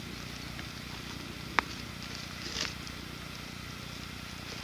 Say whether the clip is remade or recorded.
recorded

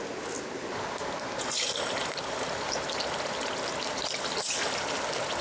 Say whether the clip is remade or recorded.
recorded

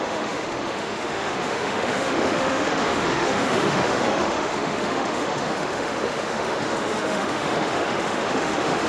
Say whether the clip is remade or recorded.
remade